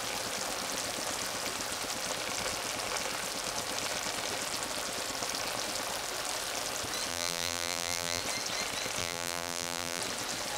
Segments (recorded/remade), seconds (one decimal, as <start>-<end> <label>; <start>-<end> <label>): 0.0-7.1 recorded; 7.1-8.2 remade; 8.2-9.0 recorded; 9.0-10.0 remade; 10.0-10.6 recorded